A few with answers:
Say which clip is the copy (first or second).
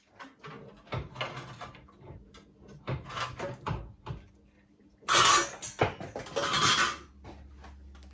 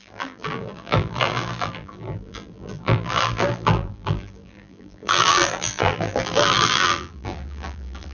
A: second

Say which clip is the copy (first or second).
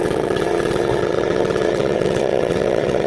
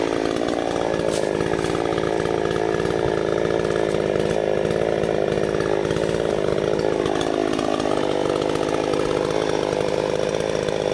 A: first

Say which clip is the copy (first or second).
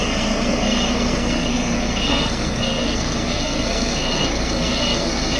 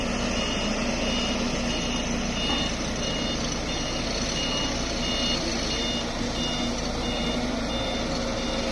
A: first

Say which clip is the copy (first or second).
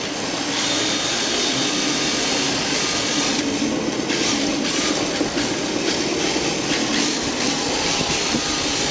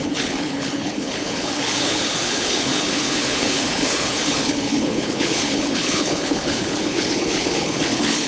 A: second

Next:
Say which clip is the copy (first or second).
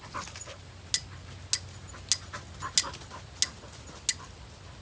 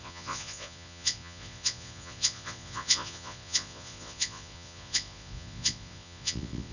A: second